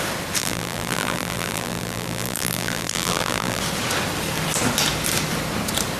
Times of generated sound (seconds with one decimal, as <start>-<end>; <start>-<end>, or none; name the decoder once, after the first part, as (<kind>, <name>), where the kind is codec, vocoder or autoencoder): 0.4-3.6 (vocoder, BigVGAN v2)